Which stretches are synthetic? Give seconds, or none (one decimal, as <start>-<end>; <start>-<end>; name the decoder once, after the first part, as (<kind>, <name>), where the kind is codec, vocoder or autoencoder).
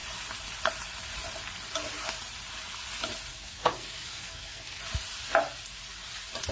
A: 3.3-4.8 (codec, SNAC)